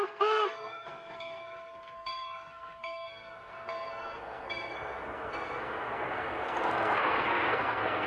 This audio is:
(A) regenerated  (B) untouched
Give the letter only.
A